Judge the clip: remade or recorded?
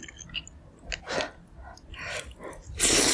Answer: recorded